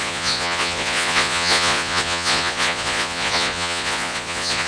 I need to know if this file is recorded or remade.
remade